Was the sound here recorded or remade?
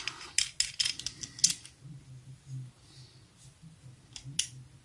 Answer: recorded